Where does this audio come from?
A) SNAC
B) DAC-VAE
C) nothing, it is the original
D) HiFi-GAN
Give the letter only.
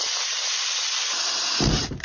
C